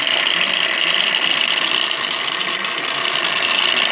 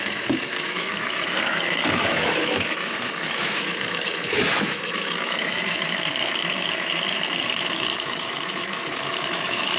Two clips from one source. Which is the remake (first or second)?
second